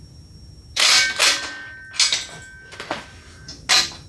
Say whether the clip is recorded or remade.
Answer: recorded